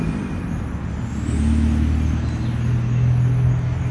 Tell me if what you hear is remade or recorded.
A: recorded